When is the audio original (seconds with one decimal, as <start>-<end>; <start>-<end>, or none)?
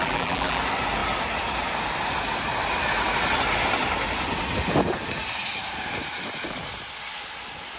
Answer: 0.6-7.8